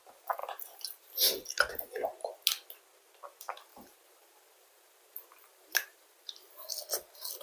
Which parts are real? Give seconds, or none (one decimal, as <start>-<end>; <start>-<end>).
0.0-0.4; 1.1-3.7; 6.3-7.4